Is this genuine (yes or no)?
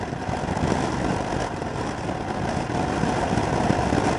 no